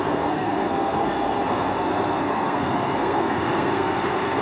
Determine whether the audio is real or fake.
fake